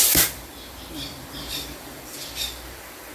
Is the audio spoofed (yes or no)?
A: yes